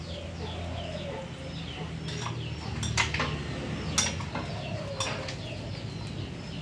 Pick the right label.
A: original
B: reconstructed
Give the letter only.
A